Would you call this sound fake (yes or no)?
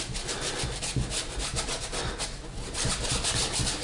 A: no